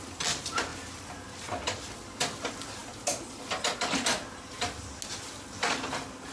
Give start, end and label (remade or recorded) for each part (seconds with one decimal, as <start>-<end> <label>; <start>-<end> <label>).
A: 0.0-6.3 recorded